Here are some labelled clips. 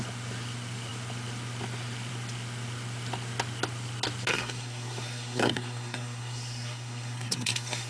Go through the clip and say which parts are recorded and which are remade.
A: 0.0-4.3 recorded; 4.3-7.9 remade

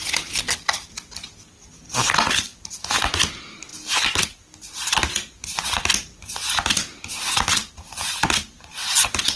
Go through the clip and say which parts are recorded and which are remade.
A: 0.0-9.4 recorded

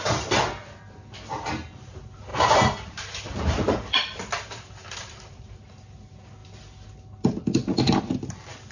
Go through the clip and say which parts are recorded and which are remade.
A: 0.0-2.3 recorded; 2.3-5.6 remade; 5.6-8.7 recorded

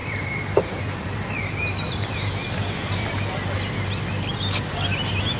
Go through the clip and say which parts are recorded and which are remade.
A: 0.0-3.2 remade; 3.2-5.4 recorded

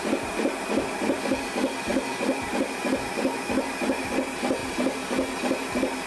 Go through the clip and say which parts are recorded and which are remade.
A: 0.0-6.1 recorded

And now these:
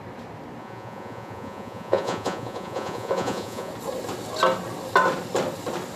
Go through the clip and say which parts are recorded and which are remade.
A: 0.0-0.6 recorded; 0.6-3.7 remade; 3.7-6.0 recorded

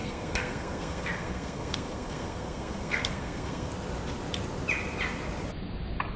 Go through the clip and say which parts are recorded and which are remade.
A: 0.0-3.7 remade; 3.7-6.2 recorded

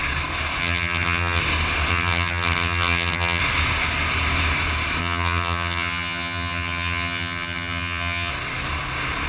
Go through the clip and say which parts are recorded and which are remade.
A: 0.0-0.6 recorded; 0.6-1.4 remade; 1.4-1.9 recorded; 1.9-3.4 remade; 3.4-5.0 recorded; 5.0-8.3 remade; 8.3-9.3 recorded